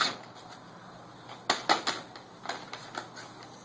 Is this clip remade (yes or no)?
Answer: no